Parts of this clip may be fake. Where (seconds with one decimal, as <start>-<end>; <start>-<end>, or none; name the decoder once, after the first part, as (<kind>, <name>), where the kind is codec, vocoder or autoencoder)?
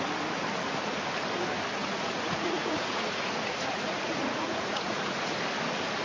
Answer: 1.8-5.4 (vocoder, Vocos)